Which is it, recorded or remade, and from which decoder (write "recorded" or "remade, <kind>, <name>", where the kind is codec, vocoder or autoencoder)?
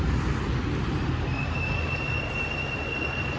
recorded